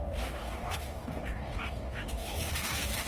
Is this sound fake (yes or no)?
yes